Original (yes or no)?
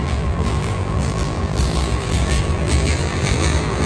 no